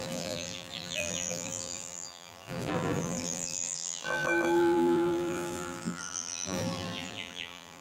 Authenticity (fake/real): fake